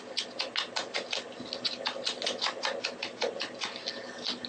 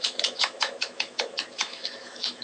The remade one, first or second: second